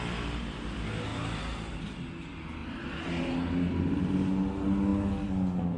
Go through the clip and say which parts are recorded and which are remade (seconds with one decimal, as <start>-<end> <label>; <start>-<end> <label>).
0.0-1.1 recorded; 1.1-1.8 remade; 1.8-5.8 recorded